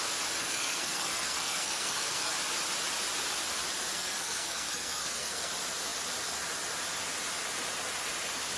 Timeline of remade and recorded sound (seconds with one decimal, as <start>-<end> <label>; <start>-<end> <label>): 0.0-0.4 recorded; 0.4-2.3 remade; 2.3-3.9 recorded; 3.9-5.5 remade; 5.5-8.6 recorded